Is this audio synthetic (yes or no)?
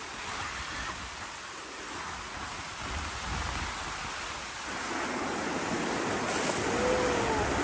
no